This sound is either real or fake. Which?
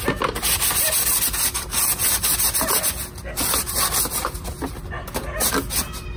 real